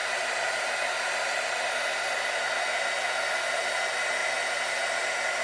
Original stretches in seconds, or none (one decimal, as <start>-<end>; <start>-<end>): 2.5-4.2; 5.0-5.4